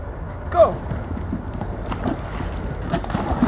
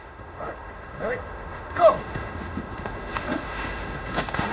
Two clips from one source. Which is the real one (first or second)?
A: first